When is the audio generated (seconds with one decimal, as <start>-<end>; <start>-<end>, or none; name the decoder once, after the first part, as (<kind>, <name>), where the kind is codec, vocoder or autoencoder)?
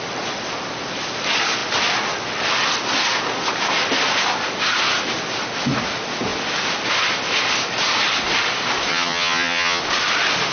8.9-9.8 (vocoder, HiFi-GAN)